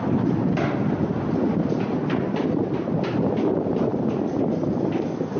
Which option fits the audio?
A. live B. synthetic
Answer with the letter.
A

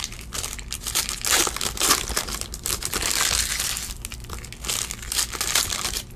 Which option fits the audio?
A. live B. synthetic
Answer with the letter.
A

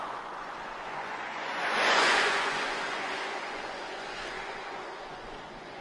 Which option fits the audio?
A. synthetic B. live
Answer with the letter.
A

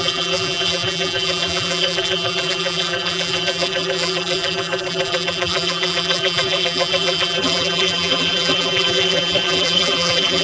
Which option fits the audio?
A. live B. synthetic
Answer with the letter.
B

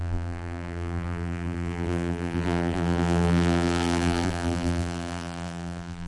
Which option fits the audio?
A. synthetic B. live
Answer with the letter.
A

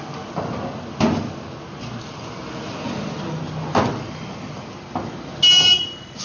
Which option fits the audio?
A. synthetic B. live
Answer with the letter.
B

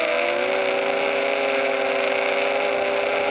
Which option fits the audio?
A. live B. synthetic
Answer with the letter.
A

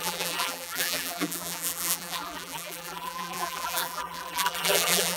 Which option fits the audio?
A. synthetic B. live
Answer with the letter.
A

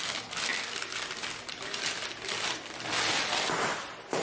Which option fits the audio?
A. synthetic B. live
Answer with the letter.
B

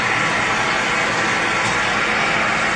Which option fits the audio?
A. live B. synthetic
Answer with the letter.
A